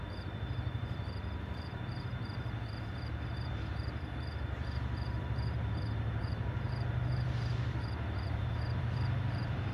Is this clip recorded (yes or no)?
no